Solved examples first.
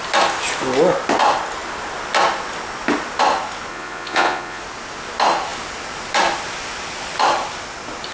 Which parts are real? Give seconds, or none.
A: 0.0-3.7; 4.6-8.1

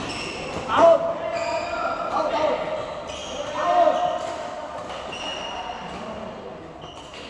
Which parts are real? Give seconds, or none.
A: 0.0-7.3

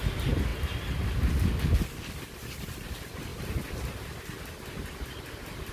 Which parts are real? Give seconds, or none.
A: 0.0-5.7